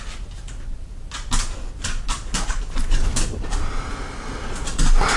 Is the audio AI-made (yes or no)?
no